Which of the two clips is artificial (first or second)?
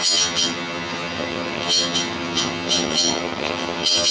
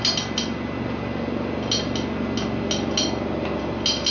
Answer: first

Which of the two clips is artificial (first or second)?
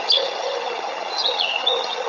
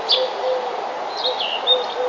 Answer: first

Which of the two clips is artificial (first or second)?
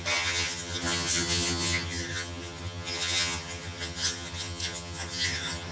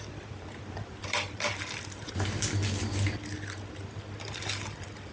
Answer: first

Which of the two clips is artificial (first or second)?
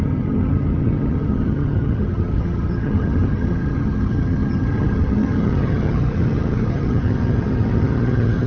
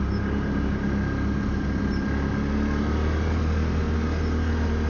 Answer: first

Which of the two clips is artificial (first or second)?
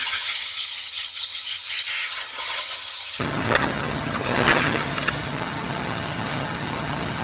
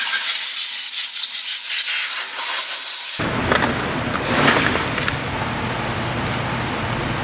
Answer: first